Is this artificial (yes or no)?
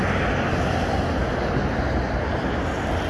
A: no